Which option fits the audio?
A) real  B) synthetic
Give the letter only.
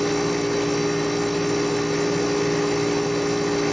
A